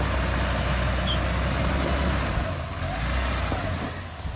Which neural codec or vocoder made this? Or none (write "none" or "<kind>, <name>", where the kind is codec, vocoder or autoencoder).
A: none